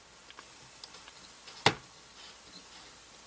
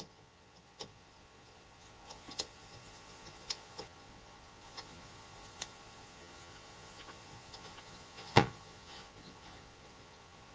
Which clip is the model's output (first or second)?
second